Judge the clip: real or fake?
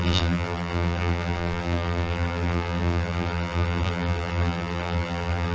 fake